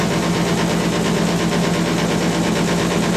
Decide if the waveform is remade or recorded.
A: recorded